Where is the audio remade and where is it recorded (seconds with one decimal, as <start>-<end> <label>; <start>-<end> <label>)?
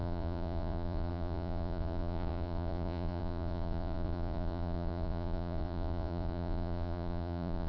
0.0-7.7 remade